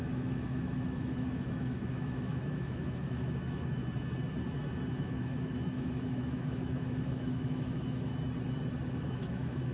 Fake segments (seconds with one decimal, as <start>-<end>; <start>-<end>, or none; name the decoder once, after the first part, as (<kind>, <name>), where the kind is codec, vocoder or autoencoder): 0.0-3.8 (autoencoder, DAC-VAE); 5.0-8.1; 8.9-9.7